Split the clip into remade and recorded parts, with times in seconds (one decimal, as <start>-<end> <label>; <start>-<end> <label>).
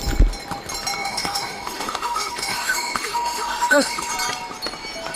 0.0-1.0 recorded; 1.0-4.1 remade; 4.1-5.2 recorded